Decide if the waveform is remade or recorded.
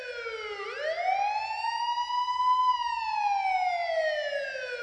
recorded